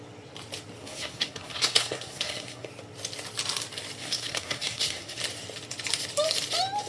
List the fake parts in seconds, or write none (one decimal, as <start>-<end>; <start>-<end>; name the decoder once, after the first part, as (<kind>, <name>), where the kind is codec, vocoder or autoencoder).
0.8-2.7 (codec, SNAC); 4.0-5.2